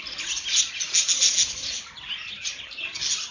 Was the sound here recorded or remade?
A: recorded